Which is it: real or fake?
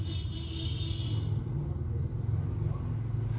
real